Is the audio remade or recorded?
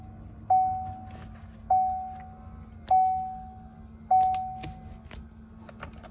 recorded